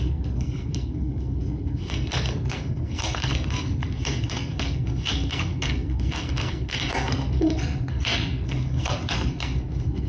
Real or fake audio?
fake